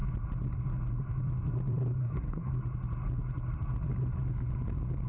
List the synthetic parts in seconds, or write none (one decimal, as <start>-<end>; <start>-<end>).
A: 2.0-2.5